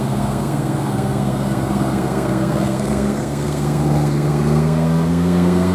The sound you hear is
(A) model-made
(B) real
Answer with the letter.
A